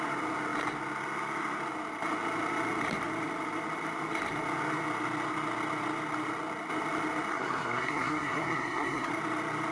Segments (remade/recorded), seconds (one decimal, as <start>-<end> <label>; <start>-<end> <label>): 0.0-7.3 recorded; 7.3-9.1 remade; 9.1-9.7 recorded